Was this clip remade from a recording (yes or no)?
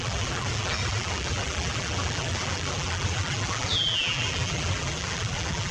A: yes